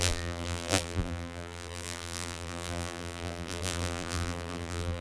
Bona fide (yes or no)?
no